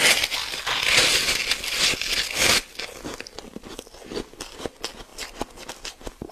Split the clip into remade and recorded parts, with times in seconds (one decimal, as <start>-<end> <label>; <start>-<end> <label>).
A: 0.0-6.3 recorded